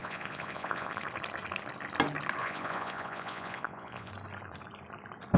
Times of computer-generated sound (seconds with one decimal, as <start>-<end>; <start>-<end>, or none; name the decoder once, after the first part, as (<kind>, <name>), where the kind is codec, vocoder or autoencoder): 0.0-1.0 (vocoder, Vocos); 2.4-4.1